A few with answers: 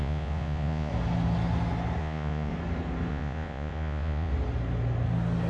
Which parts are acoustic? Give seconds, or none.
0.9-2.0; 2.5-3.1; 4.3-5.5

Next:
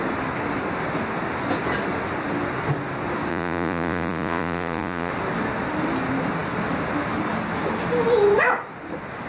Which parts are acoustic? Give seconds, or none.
0.0-3.3; 5.1-9.3

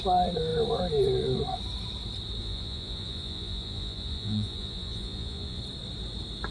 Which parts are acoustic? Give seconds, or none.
0.0-2.4; 5.6-6.5

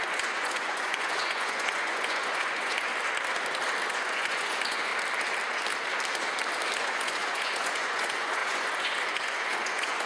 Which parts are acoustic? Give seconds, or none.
2.9-3.9; 4.9-6.8